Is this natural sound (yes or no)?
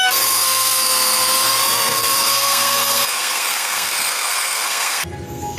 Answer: no